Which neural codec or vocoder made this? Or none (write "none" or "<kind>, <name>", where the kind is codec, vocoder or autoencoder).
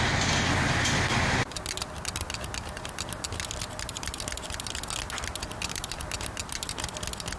none